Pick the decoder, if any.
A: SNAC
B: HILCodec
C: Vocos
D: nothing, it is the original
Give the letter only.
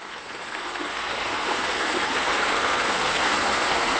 A